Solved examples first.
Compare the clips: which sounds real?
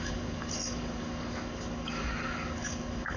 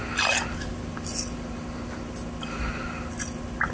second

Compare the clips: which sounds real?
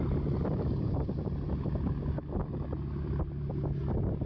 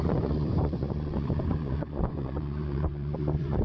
first